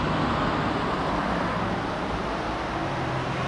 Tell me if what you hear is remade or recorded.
recorded